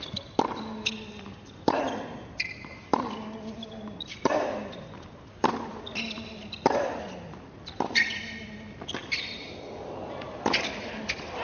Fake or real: real